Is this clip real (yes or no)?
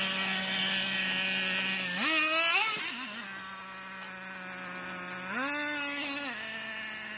yes